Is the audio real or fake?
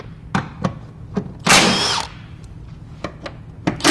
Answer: real